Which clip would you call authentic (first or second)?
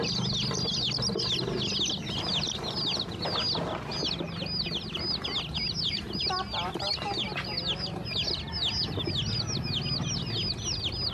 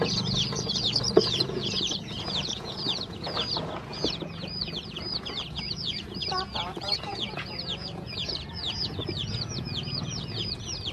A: first